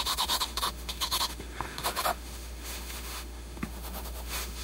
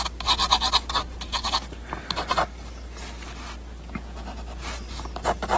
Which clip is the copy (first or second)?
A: first